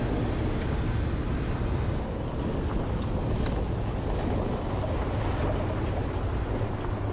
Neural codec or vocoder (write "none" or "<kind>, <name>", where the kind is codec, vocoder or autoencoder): none